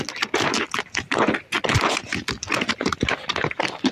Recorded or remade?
recorded